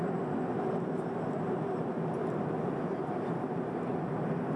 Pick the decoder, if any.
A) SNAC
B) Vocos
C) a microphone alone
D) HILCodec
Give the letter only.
C